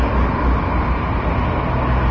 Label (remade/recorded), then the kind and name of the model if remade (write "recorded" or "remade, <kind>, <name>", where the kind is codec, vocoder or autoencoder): recorded